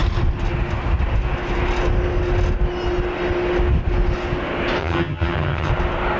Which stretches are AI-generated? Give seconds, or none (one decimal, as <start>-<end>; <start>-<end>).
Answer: 4.8-5.7